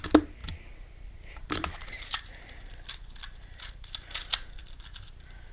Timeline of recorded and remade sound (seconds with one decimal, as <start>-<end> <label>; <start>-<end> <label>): 0.0-0.4 recorded; 0.4-3.7 remade; 3.7-4.6 recorded; 4.6-5.5 remade

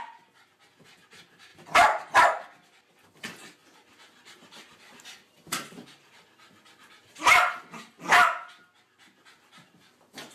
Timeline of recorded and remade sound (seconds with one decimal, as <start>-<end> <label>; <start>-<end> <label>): 0.0-1.5 recorded; 1.5-3.2 remade; 3.2-3.6 recorded; 3.6-6.3 remade; 6.3-7.0 recorded; 7.0-7.6 remade; 7.6-10.3 recorded

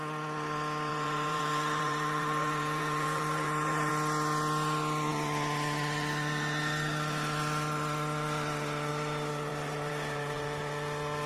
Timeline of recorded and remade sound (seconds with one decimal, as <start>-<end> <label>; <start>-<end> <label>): 0.0-0.9 recorded; 0.9-3.9 remade; 3.9-9.5 recorded; 9.5-10.6 remade; 10.6-11.3 recorded

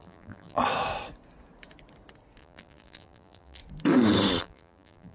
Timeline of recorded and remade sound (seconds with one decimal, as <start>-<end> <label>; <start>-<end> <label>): 0.0-0.6 remade; 0.6-2.4 recorded; 2.4-3.6 remade; 3.6-4.4 recorded; 4.4-5.1 remade

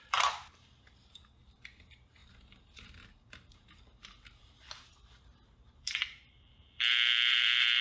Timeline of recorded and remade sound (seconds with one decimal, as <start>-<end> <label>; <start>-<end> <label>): 0.0-7.8 remade

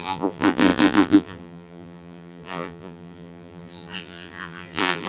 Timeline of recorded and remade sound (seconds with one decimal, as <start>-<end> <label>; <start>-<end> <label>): 0.0-5.1 remade

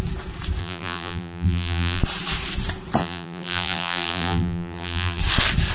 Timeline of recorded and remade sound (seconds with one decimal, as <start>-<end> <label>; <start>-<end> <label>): 0.0-0.6 recorded; 0.6-2.0 remade; 2.0-3.0 recorded; 3.0-5.2 remade; 5.2-5.7 recorded

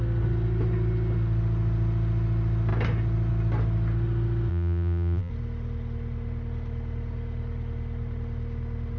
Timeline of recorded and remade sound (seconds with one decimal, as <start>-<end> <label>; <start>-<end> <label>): 0.0-4.5 recorded; 4.5-5.3 remade; 5.3-9.0 recorded